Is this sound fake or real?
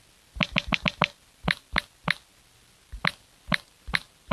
real